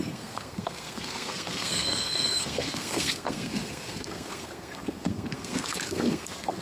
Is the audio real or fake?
fake